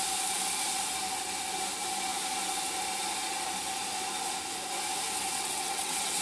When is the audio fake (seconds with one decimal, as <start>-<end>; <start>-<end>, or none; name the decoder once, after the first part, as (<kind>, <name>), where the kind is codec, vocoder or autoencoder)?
5.3-6.2 (vocoder, WaveNeXt)